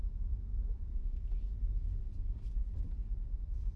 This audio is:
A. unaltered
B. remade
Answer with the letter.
B